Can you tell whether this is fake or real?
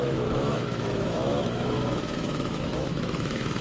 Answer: fake